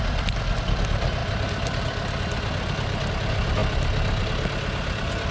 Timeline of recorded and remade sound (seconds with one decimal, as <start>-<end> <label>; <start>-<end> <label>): 0.0-5.3 recorded